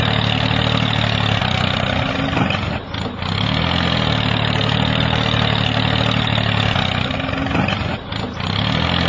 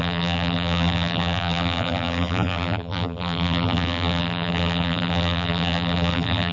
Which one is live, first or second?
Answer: first